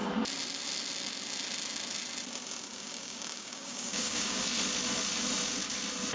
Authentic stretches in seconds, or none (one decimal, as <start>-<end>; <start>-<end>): 0.0-2.7; 4.4-6.1